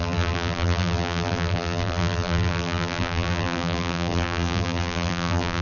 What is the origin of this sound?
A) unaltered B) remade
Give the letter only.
B